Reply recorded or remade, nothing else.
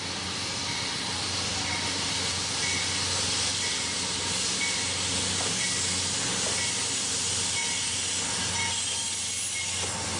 recorded